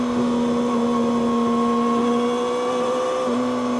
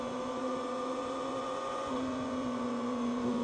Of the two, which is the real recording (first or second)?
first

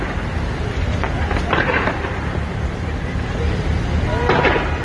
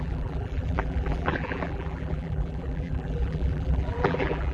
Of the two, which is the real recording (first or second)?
first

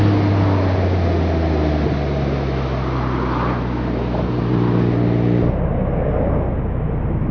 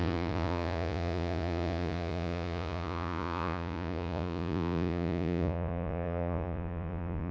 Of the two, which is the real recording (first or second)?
first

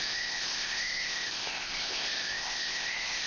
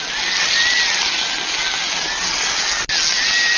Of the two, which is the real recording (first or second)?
second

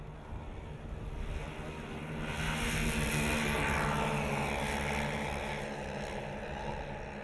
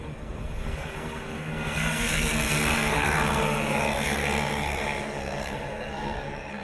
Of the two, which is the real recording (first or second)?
first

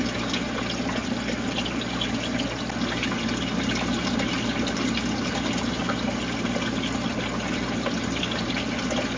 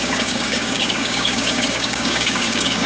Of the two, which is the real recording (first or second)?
first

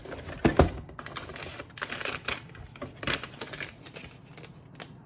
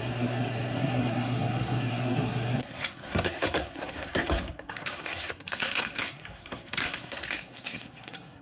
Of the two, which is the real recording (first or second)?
first